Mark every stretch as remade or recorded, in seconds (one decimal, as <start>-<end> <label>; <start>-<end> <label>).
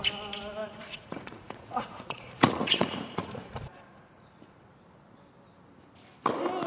0.0-0.6 recorded; 0.6-4.6 remade; 4.6-6.7 recorded